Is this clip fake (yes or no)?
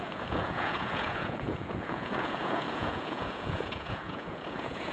yes